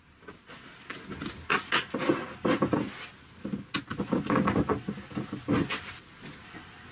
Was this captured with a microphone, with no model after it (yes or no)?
yes